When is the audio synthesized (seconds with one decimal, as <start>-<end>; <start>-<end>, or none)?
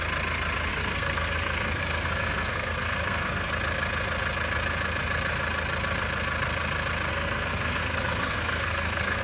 0.7-3.5; 7.1-9.2